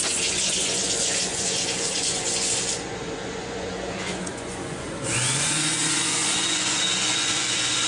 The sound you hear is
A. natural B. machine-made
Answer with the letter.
B